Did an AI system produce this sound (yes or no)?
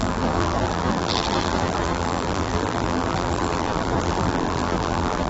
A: yes